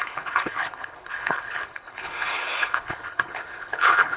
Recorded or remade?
remade